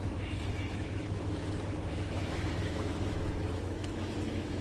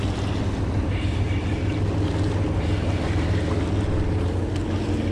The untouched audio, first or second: second